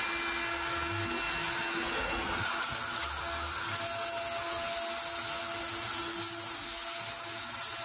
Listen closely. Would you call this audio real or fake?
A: real